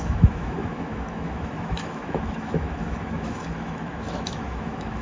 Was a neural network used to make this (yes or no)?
yes